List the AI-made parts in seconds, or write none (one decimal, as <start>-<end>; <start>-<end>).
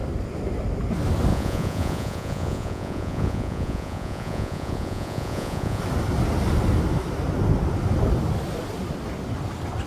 1.3-5.8